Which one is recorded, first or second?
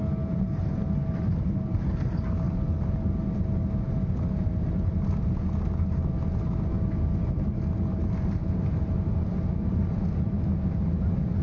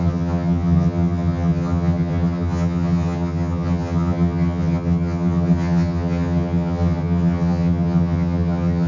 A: first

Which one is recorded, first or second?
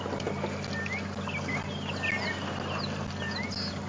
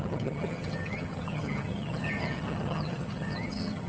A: first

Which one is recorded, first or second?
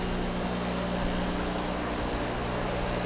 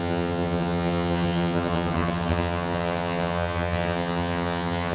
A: first